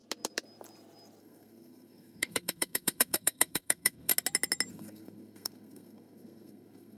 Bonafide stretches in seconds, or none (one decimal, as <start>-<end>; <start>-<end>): 0.0-1.2; 4.1-4.7